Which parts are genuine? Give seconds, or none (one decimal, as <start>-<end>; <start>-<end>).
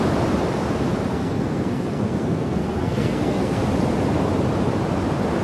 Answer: 0.0-1.1; 3.6-5.4